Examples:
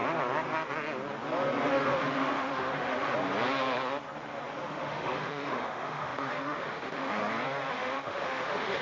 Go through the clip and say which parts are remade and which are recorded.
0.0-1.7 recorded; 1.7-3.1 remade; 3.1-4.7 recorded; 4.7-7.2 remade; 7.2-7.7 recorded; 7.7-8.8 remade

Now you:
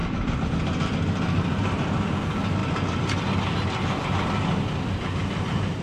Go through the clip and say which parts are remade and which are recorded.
0.0-0.5 remade; 0.5-5.8 recorded

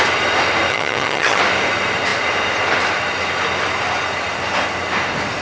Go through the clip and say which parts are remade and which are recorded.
0.0-0.7 recorded; 0.7-1.4 remade; 1.4-5.4 recorded

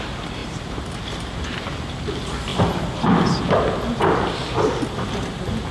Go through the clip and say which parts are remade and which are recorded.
0.0-0.4 recorded; 0.4-1.9 remade; 1.9-5.7 recorded

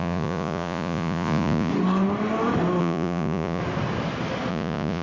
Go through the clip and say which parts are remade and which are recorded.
0.0-1.7 remade; 1.7-2.8 recorded; 2.8-3.6 remade; 3.6-4.5 recorded; 4.5-5.0 remade